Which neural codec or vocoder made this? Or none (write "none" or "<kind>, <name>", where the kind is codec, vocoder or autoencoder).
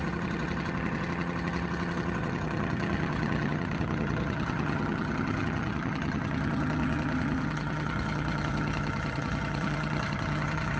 vocoder, HiFi-GAN